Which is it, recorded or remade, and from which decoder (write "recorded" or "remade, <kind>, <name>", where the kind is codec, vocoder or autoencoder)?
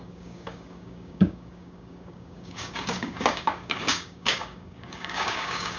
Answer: remade, codec, DAC